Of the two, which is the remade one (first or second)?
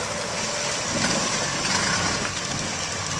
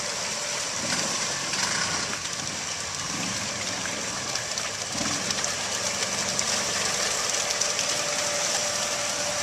second